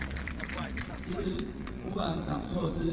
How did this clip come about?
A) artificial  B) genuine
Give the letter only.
A